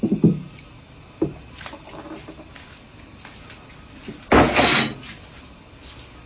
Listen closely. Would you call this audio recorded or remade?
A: recorded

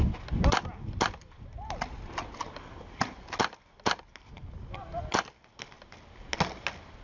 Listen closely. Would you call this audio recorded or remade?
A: recorded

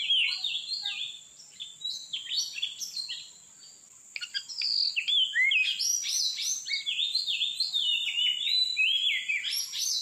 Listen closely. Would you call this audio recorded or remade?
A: recorded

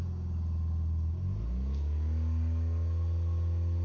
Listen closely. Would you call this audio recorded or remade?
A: recorded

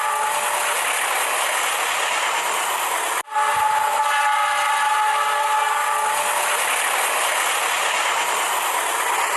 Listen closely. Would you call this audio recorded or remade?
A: recorded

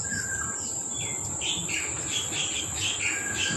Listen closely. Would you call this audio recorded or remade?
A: recorded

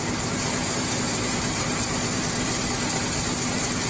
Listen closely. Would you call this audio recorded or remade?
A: recorded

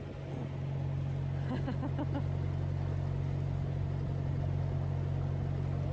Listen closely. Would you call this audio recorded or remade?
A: recorded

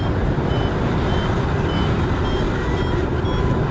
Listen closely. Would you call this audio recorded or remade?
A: recorded